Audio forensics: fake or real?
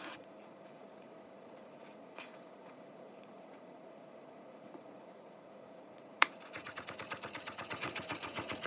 fake